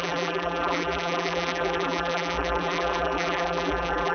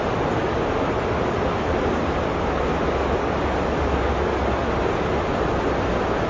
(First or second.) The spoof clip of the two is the first